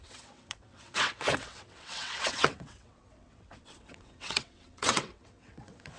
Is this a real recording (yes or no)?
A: no